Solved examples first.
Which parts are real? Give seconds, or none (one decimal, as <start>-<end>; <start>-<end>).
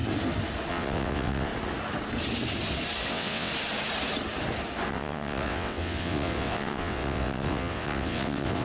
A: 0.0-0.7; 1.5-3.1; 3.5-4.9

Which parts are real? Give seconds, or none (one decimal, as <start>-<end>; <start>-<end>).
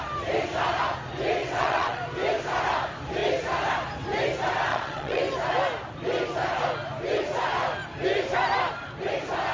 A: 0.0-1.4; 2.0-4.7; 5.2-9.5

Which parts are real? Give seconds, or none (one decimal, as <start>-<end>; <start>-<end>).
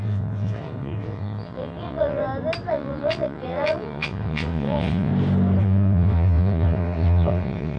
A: 2.2-2.7; 5.1-5.6